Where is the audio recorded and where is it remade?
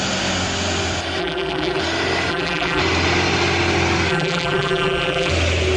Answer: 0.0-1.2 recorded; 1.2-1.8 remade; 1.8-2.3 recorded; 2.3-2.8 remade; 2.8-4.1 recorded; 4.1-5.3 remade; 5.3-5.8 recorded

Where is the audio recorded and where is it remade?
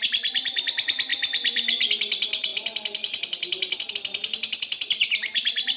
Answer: 0.0-2.5 remade; 2.5-3.9 recorded; 3.9-5.8 remade